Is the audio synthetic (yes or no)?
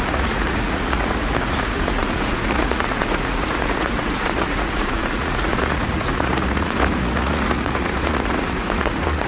yes